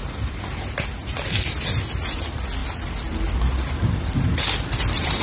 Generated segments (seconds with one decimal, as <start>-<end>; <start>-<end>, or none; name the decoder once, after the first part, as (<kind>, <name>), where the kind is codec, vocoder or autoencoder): none